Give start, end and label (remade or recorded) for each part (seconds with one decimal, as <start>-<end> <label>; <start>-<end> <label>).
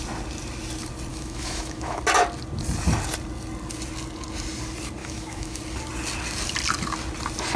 0.0-1.1 recorded; 1.1-2.0 remade; 2.0-5.0 recorded; 5.0-5.6 remade; 5.6-7.6 recorded